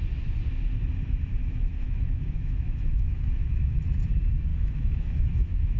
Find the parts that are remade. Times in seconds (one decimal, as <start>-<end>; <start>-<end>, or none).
1.3-3.8; 4.5-5.8